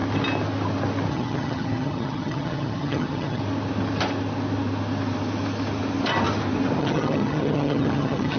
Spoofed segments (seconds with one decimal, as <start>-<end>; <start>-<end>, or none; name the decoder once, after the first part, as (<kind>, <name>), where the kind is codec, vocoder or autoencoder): 1.1-3.4 (vocoder, HiFi-GAN); 6.8-8.4